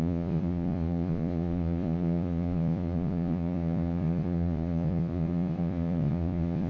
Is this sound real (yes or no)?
no